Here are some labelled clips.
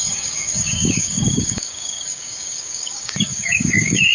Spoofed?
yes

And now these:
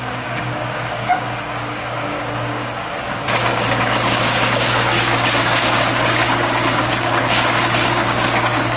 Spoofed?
yes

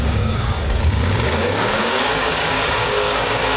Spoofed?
yes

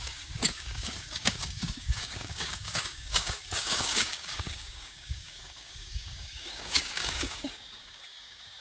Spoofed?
yes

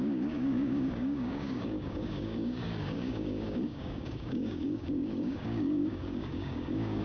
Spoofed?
yes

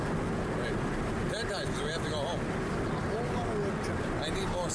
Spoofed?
no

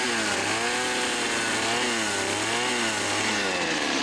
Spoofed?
no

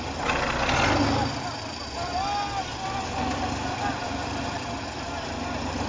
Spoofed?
no